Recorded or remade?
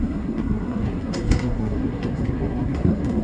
remade